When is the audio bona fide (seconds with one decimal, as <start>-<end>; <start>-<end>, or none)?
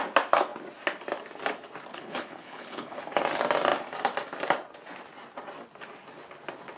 0.0-1.9; 3.0-6.8